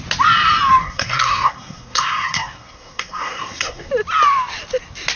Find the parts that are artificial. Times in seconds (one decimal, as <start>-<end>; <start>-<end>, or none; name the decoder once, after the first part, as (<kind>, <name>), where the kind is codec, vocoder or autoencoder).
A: 0.8-3.9 (codec, SNAC)

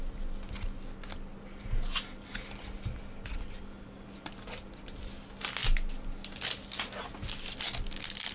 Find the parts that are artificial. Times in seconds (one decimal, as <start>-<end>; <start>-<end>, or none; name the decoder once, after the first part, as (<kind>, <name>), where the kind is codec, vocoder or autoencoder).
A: none

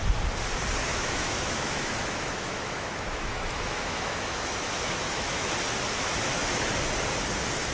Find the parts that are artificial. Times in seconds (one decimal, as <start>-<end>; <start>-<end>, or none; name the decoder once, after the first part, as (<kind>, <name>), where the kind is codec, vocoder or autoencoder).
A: 0.9-5.5 (autoencoder, DAC-VAE)

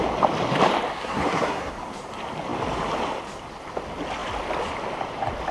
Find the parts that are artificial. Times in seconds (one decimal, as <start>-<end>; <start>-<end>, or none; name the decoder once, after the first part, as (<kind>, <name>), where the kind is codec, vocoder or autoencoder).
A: 0.9-1.7 (codec, SNAC)